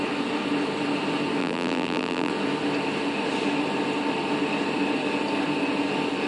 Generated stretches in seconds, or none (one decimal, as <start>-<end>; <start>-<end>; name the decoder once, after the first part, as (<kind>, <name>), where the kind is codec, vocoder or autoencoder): 1.4-2.3 (vocoder, BigVGAN v2)